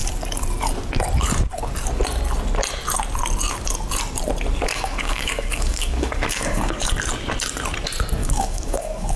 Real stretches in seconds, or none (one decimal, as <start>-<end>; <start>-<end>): 0.0-4.7; 6.9-8.2